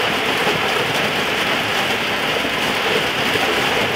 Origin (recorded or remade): recorded